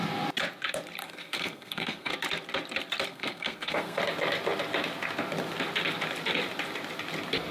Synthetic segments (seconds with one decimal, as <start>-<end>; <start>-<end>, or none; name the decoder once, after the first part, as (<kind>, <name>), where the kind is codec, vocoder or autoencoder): 1.0-2.1 (codec, SNAC); 3.1-4.0